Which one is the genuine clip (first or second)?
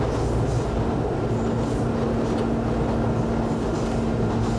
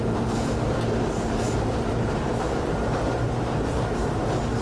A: first